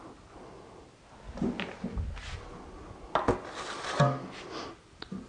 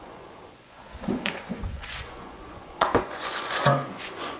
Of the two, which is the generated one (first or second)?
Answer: second